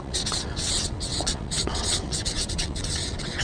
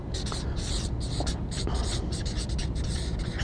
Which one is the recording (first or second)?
second